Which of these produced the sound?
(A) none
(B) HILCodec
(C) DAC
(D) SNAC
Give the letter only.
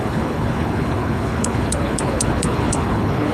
B